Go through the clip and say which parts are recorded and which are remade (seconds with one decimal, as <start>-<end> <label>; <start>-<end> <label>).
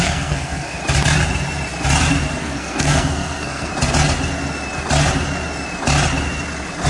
0.0-0.8 remade; 0.8-2.4 recorded; 2.4-3.7 remade; 3.7-6.9 recorded